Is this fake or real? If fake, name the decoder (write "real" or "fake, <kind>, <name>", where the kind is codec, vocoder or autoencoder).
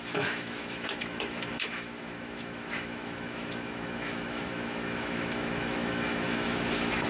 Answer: fake, autoencoder, DAC-VAE